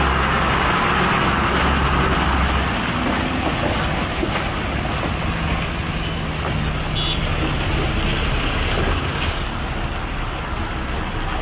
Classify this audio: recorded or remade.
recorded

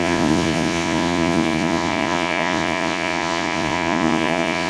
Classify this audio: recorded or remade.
remade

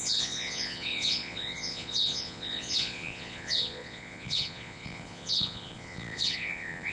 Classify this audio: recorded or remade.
remade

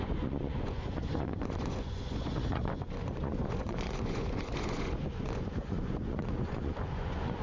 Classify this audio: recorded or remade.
remade